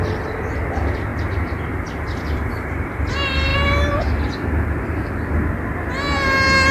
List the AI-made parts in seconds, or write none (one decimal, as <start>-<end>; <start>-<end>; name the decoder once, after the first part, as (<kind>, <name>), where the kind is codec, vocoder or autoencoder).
1.1-3.1 (vocoder, BigVGAN v2)